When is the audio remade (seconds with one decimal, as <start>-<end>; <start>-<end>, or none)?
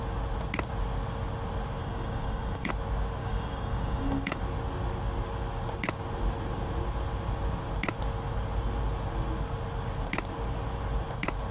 1.8-2.7; 3.2-4.4